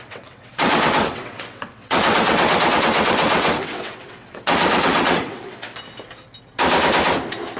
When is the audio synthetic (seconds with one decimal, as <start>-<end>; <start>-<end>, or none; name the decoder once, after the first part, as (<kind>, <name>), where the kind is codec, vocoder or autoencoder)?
0.0-5.7 (vocoder, WaveNeXt)